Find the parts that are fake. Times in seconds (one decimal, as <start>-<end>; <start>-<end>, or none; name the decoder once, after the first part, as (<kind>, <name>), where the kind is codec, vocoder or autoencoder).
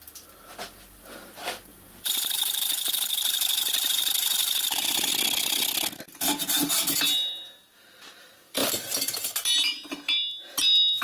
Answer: 1.7-5.1 (vocoder, BigVGAN v2)